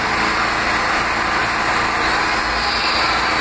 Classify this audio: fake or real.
real